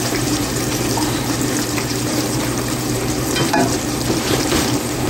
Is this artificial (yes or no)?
yes